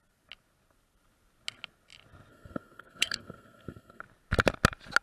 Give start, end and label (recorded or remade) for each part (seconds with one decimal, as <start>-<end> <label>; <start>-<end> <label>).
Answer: 0.0-2.3 recorded; 2.3-4.0 remade; 4.0-5.0 recorded